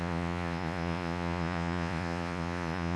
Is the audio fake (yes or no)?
yes